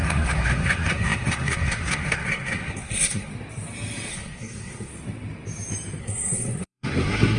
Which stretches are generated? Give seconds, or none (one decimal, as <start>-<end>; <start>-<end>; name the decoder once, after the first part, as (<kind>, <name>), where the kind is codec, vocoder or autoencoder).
0.0-3.3 (codec, SNAC); 4.1-4.9; 6.0-7.4